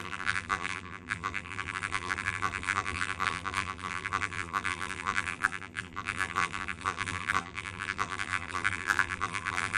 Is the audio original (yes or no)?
no